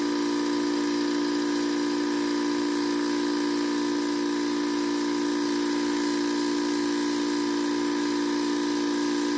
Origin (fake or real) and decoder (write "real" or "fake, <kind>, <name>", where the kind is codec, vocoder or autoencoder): real